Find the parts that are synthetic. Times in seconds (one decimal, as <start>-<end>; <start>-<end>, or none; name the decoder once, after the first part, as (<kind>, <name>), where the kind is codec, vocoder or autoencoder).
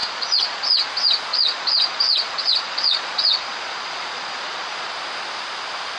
0.0-0.9 (vocoder, Vocos); 1.3-4.9